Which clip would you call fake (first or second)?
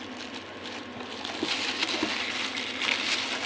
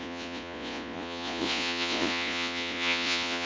second